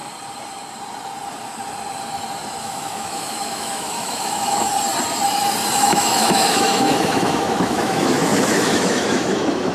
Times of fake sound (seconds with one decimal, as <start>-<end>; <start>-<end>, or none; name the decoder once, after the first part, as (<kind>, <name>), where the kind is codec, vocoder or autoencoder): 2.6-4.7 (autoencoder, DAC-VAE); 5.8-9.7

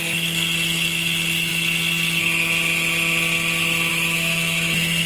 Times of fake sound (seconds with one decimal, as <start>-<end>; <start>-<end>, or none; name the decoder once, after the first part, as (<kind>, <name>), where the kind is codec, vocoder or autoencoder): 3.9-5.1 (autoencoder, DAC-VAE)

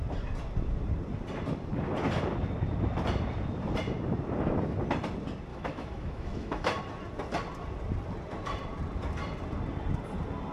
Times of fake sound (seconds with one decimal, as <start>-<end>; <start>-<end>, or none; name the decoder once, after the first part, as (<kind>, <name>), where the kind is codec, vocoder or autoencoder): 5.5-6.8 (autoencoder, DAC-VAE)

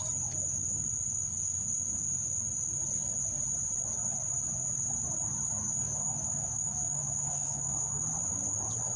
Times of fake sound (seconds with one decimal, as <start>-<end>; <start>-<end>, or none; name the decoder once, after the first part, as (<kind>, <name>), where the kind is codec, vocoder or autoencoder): 5.6-8.0 (autoencoder, DAC-VAE)